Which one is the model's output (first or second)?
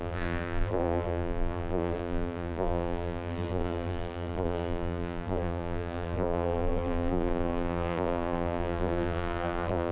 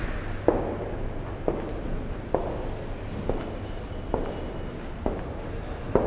first